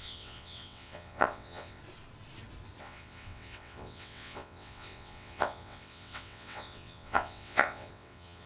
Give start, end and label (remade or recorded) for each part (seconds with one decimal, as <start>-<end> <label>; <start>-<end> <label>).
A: 0.0-1.8 remade; 1.8-2.8 recorded; 2.8-8.5 remade